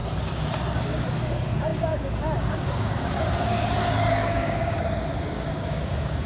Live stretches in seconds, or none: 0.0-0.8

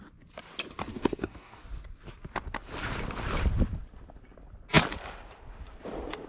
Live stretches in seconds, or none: 0.0-0.9; 1.6-6.3

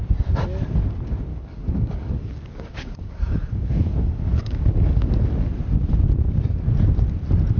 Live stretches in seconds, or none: 0.0-1.3; 5.1-7.6

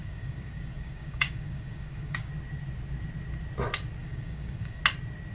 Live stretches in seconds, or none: 2.3-4.0; 4.8-5.3